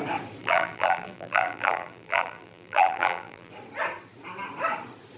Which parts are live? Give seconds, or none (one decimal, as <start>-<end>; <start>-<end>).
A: 0.0-0.4; 3.5-5.2